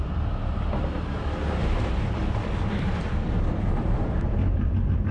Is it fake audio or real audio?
fake